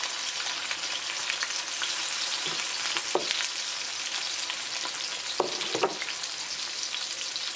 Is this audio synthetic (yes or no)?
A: no